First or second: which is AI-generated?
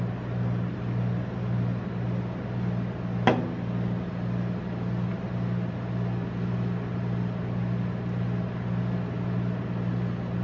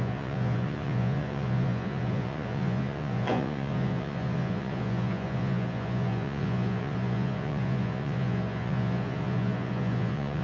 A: second